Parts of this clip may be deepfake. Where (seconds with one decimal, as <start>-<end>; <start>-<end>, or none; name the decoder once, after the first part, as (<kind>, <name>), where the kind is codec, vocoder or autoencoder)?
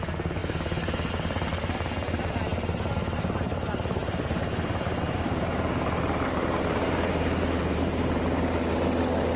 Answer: 4.0-8.2 (vocoder, BigVGAN v2)